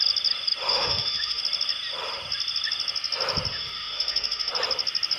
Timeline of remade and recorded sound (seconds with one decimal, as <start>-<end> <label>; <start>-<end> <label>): 0.0-0.7 recorded; 0.7-1.4 remade; 1.4-3.5 recorded; 3.5-4.5 remade; 4.5-5.2 recorded